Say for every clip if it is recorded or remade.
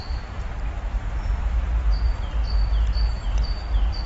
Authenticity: remade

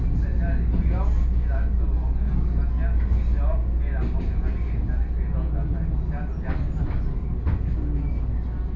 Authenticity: recorded